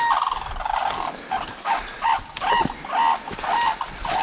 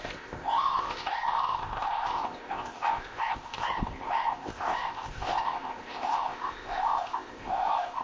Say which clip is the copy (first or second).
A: second